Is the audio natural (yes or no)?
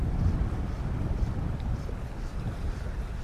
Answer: no